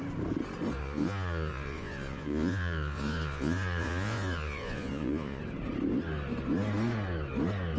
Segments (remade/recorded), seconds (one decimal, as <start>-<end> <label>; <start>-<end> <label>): 0.0-0.8 recorded; 0.8-5.4 remade; 5.4-7.8 recorded